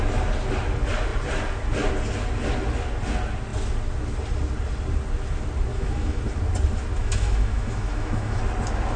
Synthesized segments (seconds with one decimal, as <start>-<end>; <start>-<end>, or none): 5.7-6.2; 7.0-8.4

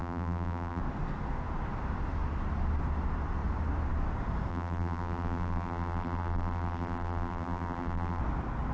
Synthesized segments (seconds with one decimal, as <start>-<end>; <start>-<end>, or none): 0.0-0.8; 4.5-8.2